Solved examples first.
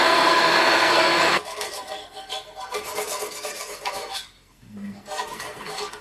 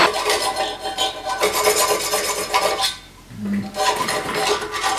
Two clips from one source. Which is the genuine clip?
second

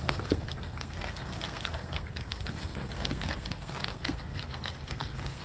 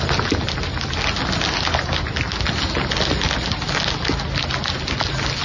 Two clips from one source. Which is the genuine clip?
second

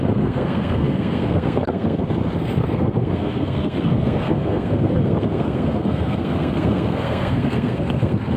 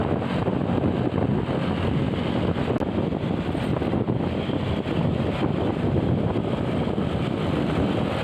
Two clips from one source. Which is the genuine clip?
second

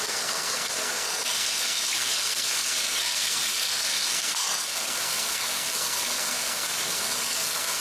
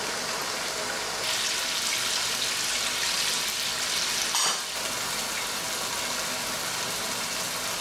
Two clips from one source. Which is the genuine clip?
second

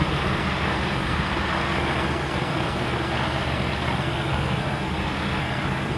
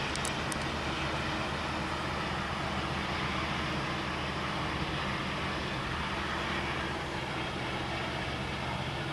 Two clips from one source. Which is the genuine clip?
second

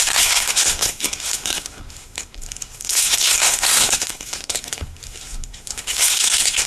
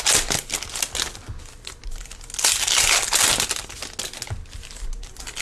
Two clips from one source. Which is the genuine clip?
second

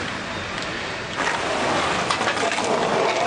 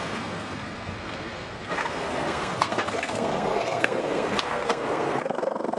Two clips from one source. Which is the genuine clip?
first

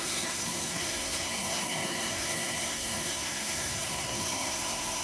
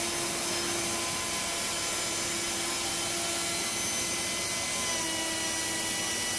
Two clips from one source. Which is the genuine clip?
second